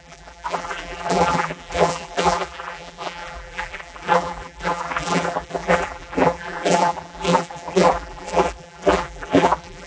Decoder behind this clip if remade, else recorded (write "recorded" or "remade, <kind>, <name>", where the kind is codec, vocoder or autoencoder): remade, vocoder, BigVGAN v2